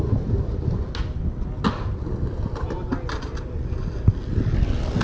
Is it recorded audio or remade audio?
recorded